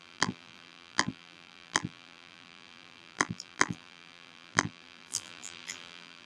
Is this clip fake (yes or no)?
yes